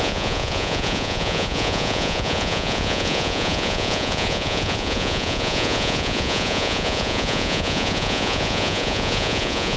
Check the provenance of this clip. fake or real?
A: fake